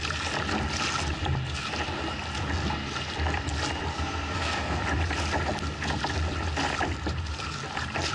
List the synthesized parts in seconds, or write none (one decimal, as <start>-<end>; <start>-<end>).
3.9-4.8